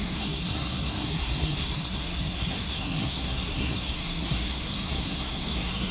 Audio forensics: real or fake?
fake